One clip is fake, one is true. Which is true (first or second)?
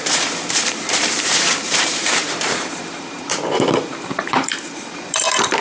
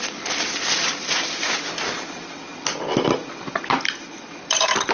second